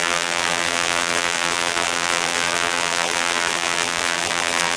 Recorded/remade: remade